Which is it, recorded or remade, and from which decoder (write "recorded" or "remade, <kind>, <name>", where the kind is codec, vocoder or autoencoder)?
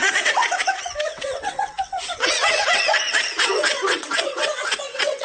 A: remade, vocoder, WaveNeXt